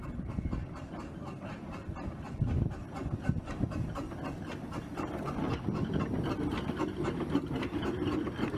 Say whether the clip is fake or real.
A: real